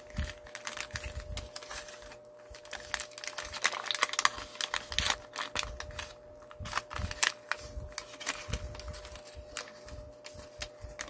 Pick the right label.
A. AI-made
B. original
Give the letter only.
B